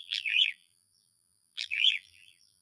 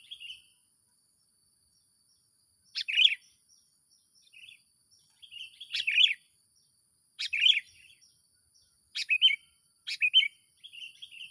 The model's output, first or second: first